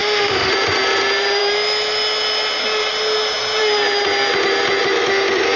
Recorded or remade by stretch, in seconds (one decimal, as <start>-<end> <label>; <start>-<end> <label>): 0.0-0.5 remade; 0.5-5.6 recorded